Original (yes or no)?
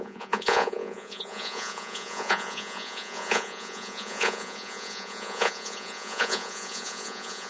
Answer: no